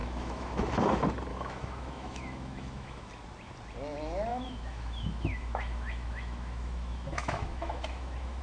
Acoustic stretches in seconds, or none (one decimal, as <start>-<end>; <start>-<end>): 0.7-1.3; 3.1-4.3